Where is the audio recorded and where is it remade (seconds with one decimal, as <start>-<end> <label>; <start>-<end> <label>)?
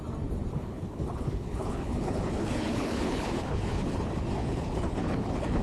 0.0-0.5 recorded; 0.5-3.9 remade; 3.9-4.4 recorded; 4.4-5.6 remade